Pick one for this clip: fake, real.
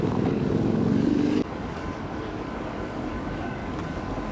fake